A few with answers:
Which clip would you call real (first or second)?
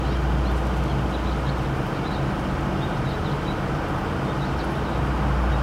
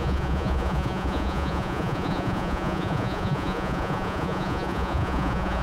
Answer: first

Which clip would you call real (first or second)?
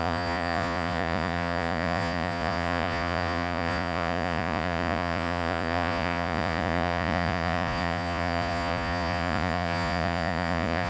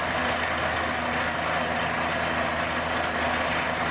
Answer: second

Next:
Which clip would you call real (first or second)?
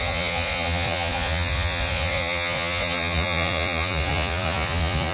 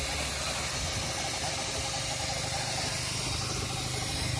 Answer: second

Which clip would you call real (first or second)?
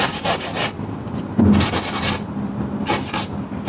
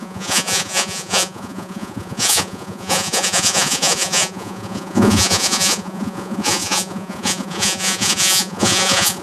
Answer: first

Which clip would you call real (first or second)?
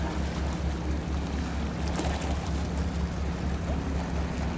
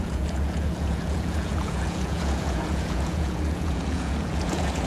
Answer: first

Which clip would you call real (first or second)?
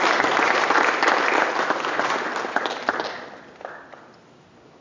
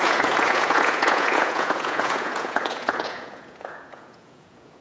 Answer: first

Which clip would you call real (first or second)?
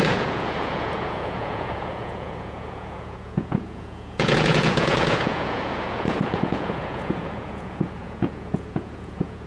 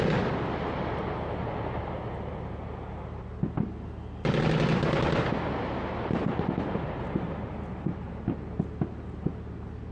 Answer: second